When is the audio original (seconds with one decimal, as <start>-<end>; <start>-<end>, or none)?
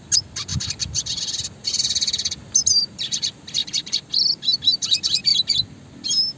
0.0-3.6; 4.1-6.4